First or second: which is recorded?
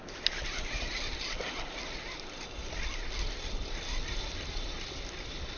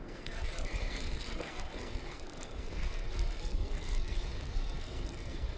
first